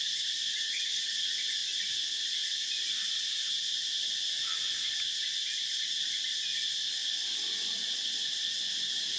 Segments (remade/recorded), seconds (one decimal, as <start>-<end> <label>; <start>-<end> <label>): 0.0-0.5 recorded; 0.5-1.1 remade; 1.1-9.2 recorded